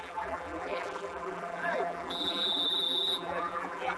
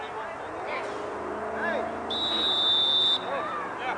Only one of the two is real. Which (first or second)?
second